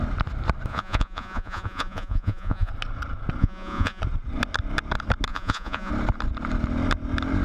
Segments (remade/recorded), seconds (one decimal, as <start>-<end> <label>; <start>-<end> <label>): 0.0-0.7 recorded; 0.7-2.7 remade; 2.7-3.4 recorded; 3.4-4.0 remade; 4.0-5.3 recorded; 5.3-5.9 remade; 5.9-7.4 recorded